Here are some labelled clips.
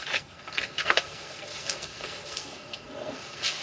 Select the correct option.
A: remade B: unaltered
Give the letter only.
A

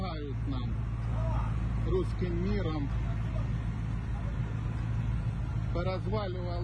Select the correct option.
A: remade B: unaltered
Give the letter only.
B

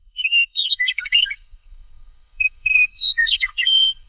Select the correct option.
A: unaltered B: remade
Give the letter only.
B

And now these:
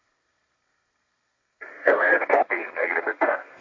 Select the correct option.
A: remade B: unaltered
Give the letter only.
A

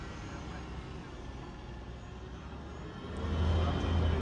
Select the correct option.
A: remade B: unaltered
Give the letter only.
B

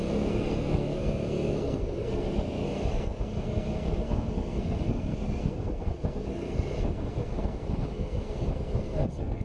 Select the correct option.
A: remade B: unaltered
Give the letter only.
A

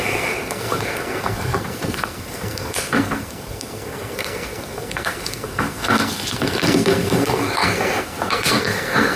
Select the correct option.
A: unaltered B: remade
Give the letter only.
B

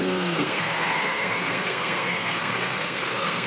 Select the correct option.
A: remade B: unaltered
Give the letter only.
A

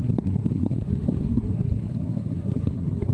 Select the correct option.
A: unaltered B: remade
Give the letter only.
B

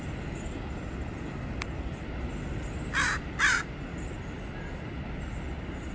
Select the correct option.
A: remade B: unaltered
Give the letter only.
B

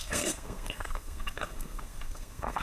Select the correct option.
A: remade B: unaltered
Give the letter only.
A